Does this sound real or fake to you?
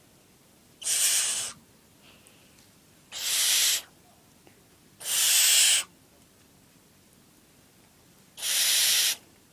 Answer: fake